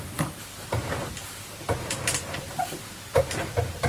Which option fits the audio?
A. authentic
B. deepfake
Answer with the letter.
B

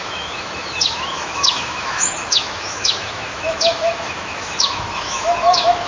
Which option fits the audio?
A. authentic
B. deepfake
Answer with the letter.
B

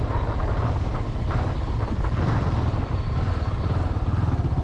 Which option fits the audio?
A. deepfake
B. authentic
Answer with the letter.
B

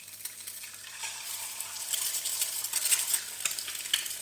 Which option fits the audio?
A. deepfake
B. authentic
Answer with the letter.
B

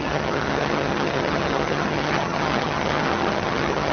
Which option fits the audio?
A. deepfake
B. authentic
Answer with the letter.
A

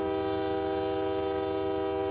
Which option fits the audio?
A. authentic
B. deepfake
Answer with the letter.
A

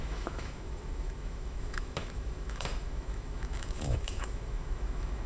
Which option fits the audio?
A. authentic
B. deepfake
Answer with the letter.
B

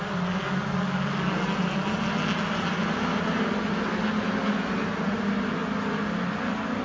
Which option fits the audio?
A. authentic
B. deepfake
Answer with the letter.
A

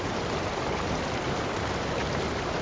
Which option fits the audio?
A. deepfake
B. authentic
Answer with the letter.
B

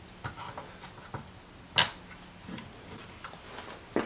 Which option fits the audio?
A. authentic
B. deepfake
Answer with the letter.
A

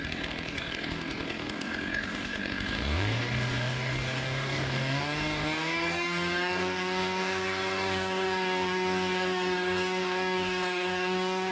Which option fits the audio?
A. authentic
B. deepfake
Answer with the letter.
B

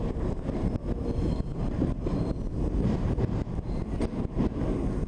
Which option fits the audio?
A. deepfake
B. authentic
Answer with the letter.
B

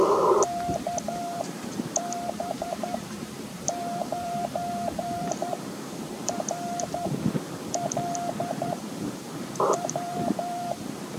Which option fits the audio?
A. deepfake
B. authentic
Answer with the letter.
A